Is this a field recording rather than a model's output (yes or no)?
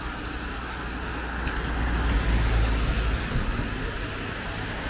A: yes